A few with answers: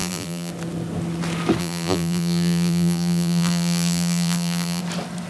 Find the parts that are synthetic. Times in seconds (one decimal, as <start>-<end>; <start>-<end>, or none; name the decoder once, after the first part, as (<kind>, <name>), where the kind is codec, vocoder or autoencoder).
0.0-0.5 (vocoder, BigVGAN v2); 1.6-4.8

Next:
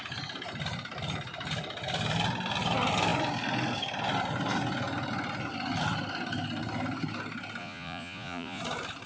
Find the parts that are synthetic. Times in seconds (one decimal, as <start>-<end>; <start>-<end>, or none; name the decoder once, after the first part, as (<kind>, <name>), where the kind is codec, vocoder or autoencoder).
7.6-8.6 (vocoder, Vocos)

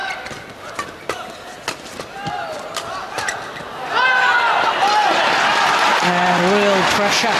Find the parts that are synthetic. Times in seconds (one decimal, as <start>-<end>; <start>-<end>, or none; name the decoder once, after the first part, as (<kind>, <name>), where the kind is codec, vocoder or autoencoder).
none